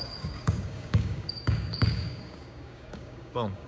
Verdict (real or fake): fake